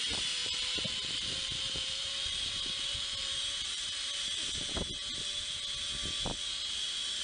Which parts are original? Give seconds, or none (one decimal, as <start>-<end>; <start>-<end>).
0.0-0.4; 4.5-7.2